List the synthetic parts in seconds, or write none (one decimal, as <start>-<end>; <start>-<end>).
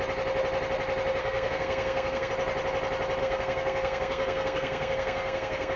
1.2-2.3; 3.2-5.8